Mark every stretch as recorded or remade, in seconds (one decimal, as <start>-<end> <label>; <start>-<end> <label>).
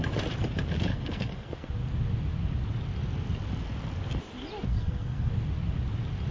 0.0-0.9 recorded; 0.9-1.7 remade; 1.7-4.7 recorded; 4.7-5.3 remade; 5.3-6.3 recorded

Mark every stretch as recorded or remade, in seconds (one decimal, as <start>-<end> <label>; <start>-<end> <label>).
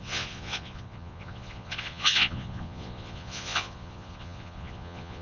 0.0-5.2 remade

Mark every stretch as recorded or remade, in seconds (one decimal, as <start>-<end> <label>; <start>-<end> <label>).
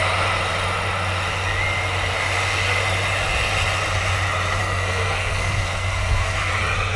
0.0-4.6 recorded; 4.6-6.5 remade; 6.5-7.0 recorded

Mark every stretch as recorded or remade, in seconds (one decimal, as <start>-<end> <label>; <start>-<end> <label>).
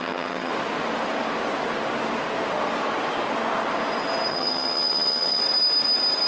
0.0-0.5 remade; 0.5-4.3 recorded; 4.3-5.4 remade; 5.4-6.3 recorded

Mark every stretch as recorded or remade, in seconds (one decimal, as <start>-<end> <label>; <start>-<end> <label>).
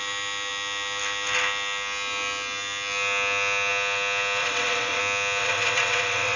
0.0-4.4 recorded; 4.4-5.0 remade; 5.0-5.4 recorded; 5.4-6.4 remade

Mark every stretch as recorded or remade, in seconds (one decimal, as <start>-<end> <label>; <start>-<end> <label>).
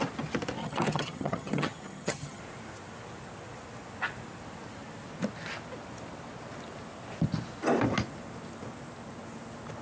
0.0-0.6 recorded; 0.6-2.4 remade; 2.4-9.8 recorded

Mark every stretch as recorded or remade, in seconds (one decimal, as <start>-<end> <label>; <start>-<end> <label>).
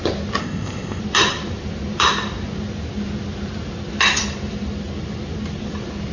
0.0-0.4 recorded; 0.4-1.0 remade; 1.0-6.1 recorded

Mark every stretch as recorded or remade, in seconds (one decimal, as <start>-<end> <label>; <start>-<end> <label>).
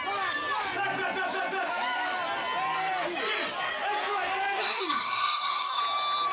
0.0-4.6 recorded; 4.6-5.8 remade; 5.8-6.3 recorded